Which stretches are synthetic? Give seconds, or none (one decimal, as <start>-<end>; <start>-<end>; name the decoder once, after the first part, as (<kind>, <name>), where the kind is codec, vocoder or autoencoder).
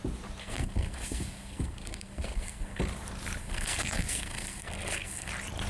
0.4-2.8 (codec, SNAC); 3.4-5.3